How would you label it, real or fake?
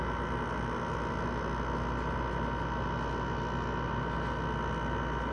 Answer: real